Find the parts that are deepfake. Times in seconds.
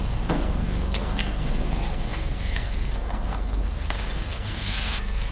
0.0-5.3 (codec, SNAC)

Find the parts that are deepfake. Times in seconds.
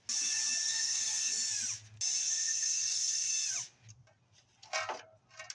0.7-1.3 (codec, SNAC); 2.2-3.3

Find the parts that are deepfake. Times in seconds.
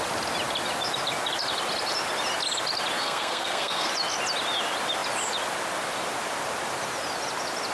3.0-3.9 (codec, SNAC)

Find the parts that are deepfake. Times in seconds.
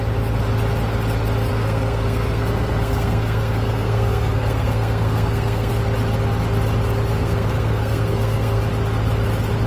1.5-5.7 (codec, SNAC); 7.1-8.6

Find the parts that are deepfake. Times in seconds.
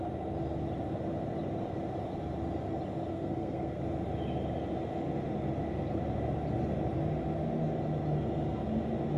3.1-3.8 (codec, SNAC)